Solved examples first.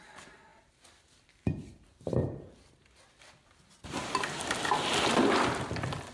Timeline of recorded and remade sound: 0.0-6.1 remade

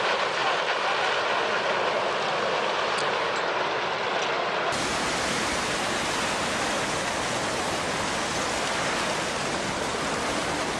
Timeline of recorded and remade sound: 0.0-10.8 recorded